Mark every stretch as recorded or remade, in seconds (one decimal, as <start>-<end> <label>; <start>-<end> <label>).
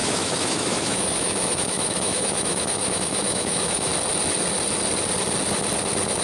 0.0-3.9 remade; 3.9-6.2 recorded